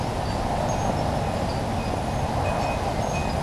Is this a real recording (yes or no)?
yes